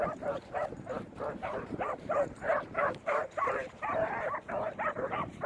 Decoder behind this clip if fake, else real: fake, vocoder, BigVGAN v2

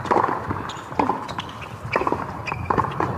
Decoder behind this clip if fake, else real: fake, vocoder, BigVGAN v2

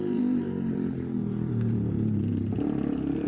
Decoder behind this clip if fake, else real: fake, vocoder, BigVGAN v2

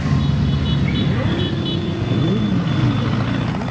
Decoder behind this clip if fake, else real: real